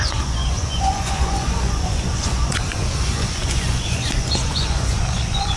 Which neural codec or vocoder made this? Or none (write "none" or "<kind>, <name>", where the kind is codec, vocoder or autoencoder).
vocoder, Vocos